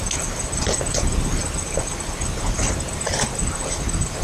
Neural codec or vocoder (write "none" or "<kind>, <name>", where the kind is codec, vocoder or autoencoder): none